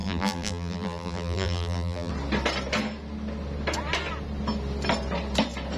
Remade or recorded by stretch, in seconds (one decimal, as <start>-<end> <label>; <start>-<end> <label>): 0.0-2.1 remade; 2.1-5.8 recorded